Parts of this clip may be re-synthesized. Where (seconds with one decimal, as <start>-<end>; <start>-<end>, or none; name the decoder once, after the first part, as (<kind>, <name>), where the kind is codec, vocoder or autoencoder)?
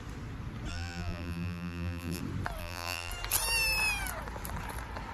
0.7-2.2 (vocoder, BigVGAN v2); 2.6-3.1